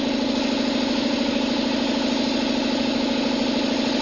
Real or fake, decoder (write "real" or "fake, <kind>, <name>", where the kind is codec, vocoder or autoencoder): real